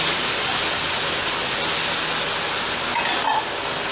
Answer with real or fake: real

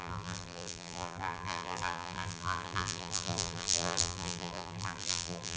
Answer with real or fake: fake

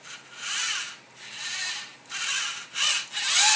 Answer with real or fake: real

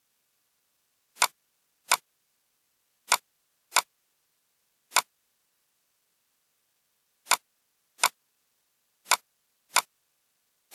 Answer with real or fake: real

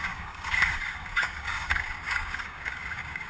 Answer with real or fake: fake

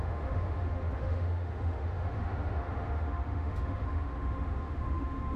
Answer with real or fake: fake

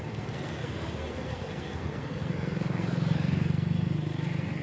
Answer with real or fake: fake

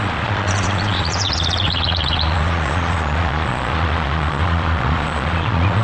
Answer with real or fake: fake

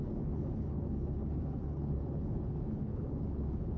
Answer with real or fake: fake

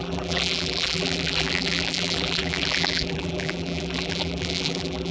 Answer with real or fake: fake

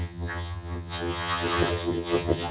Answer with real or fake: fake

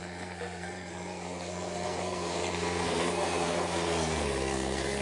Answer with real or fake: fake